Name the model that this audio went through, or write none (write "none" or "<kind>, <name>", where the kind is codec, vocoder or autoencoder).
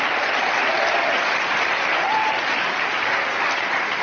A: none